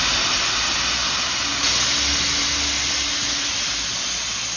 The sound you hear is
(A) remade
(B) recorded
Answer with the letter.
B